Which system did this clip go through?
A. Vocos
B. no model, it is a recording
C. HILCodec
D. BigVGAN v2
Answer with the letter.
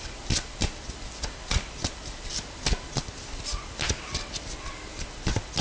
B